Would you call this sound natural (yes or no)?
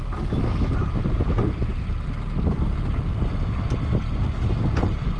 yes